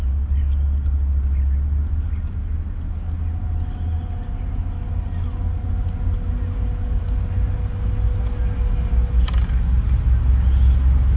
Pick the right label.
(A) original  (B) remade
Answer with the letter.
A